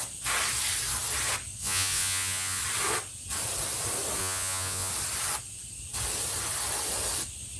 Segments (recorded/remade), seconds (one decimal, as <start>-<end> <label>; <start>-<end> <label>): 0.0-1.6 recorded; 1.6-2.6 remade; 2.6-4.2 recorded; 4.2-4.9 remade; 4.9-7.6 recorded